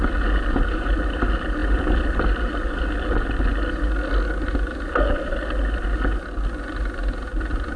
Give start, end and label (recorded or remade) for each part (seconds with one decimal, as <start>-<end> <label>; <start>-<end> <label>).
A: 0.0-7.8 recorded